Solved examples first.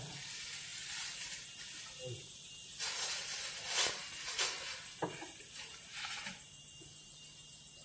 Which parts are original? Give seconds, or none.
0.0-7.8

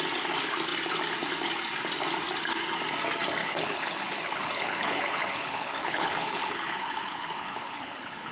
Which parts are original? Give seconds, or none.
0.0-3.4